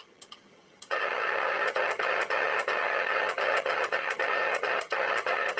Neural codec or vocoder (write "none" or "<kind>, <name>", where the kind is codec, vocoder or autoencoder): vocoder, HiFi-GAN